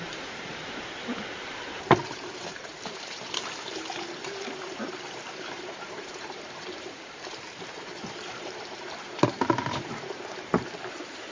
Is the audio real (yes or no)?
no